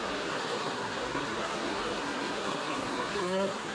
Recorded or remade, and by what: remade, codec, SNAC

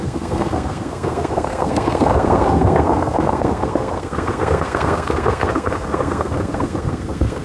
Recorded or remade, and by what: remade, codec, SNAC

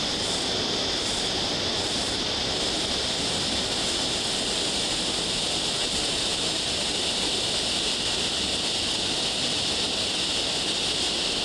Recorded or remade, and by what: recorded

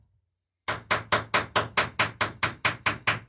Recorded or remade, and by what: recorded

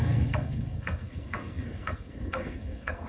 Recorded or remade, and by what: remade, codec, SNAC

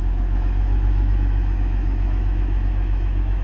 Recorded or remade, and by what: remade, autoencoder, DAC-VAE